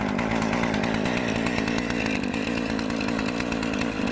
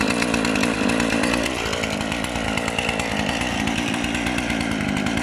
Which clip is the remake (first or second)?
second